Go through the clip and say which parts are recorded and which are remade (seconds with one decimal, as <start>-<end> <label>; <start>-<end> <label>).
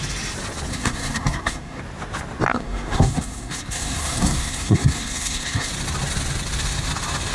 0.0-0.7 recorded; 0.7-1.8 remade; 1.8-2.5 recorded; 2.5-5.7 remade; 5.7-7.3 recorded